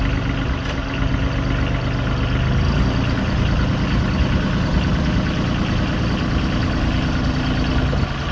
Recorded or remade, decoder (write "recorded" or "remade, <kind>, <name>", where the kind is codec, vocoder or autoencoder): recorded